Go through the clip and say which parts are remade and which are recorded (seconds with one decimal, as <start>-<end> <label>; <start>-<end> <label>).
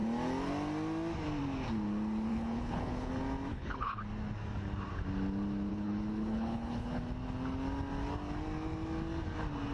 0.0-2.3 recorded; 2.3-3.1 remade; 3.1-3.5 recorded; 3.5-4.0 remade; 4.0-5.7 recorded; 5.7-7.0 remade; 7.0-9.7 recorded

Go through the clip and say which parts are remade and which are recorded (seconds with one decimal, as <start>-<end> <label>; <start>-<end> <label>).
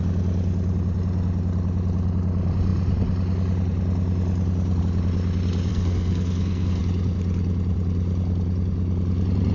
0.0-5.7 recorded; 5.7-6.8 remade; 6.8-9.5 recorded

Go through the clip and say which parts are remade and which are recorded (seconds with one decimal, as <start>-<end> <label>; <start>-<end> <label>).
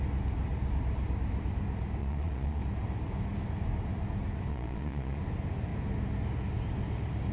0.0-2.0 recorded; 2.0-2.6 remade; 2.6-4.5 recorded; 4.5-5.2 remade; 5.2-7.3 recorded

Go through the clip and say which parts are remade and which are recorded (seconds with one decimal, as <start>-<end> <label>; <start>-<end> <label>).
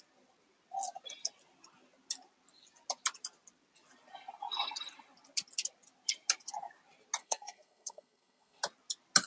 0.0-7.2 recorded; 7.2-8.6 remade; 8.6-9.3 recorded